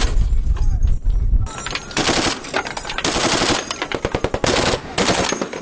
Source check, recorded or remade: remade